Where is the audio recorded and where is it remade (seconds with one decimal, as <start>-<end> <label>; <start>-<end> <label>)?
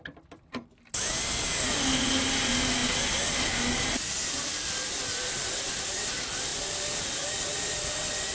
0.0-8.3 recorded